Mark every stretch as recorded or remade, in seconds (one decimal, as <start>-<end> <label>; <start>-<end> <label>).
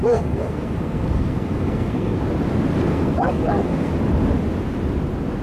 0.0-2.2 remade; 2.2-2.9 recorded; 2.9-3.9 remade; 3.9-5.4 recorded